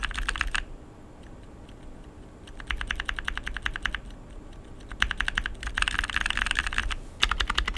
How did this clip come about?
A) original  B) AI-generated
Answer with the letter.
A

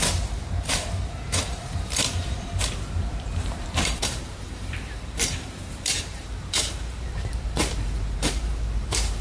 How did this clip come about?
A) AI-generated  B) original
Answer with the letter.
A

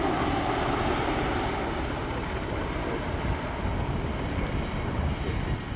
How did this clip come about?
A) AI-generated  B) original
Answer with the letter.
B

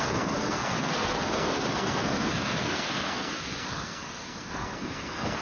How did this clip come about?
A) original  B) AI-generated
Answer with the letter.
B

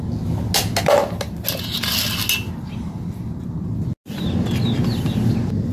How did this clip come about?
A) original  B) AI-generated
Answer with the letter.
A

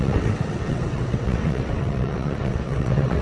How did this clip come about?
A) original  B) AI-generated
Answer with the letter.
B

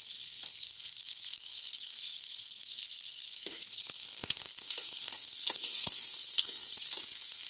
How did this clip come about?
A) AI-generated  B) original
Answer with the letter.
A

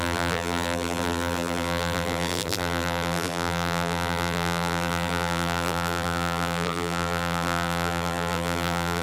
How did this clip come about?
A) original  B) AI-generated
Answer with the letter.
B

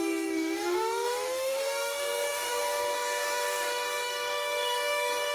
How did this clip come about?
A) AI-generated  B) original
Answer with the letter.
A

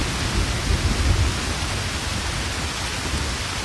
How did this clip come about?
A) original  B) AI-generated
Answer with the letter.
A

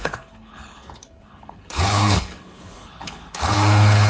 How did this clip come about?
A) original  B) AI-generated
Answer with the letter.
B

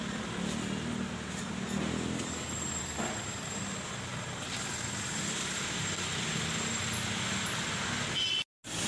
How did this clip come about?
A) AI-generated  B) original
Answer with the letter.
B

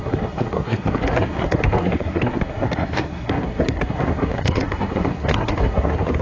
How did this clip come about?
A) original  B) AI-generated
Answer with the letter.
B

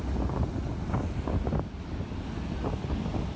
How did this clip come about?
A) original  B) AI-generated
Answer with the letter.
A